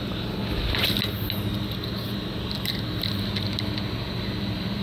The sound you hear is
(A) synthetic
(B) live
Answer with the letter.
B